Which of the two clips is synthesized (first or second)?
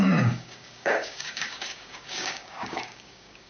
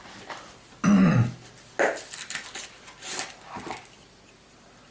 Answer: first